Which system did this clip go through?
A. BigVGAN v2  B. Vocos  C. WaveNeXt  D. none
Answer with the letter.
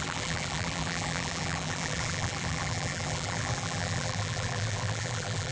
A